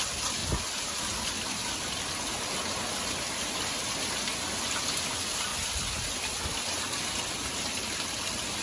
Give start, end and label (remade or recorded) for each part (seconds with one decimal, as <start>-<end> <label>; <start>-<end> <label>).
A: 0.0-8.6 recorded